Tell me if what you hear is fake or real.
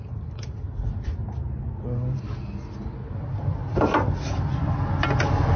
real